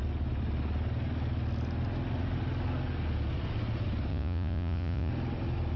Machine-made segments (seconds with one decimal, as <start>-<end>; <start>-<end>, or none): 4.1-5.1